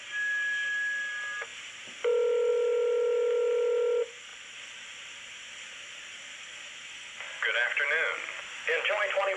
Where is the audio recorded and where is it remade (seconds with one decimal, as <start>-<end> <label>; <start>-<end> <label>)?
0.0-9.4 recorded